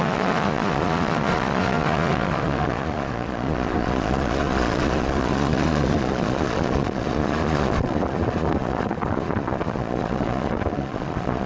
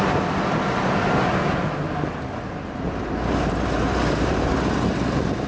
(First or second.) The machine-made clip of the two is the first